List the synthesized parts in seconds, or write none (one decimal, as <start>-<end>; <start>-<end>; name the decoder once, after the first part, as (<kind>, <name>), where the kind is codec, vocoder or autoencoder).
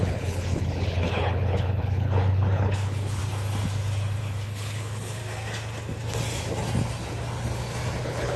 0.0-3.2 (codec, HILCodec); 4.2-5.2; 8.0-8.4